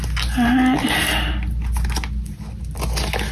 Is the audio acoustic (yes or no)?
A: yes